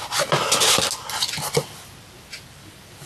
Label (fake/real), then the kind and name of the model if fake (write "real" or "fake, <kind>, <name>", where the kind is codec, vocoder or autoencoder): real